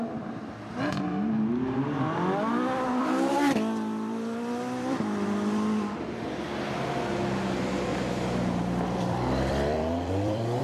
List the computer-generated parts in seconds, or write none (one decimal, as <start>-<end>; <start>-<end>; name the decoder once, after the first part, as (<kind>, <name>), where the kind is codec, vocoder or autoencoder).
3.0-6.4 (vocoder, BigVGAN v2); 7.9-10.6